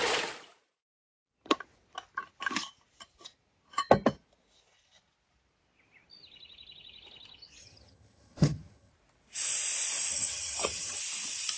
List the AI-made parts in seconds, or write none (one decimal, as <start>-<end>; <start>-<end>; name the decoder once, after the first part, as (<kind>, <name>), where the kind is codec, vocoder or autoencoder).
7.6-8.9 (vocoder, HiFi-GAN); 10.1-11.0